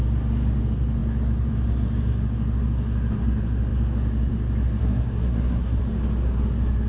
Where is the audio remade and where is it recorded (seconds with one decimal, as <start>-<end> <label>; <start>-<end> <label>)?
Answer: 0.0-4.8 recorded; 4.8-5.8 remade; 5.8-6.9 recorded